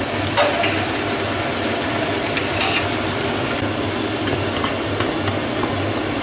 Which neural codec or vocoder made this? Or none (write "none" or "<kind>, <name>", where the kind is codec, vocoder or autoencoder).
none